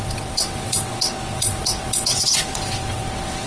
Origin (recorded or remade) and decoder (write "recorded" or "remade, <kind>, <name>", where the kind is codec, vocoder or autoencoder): remade, vocoder, WaveNeXt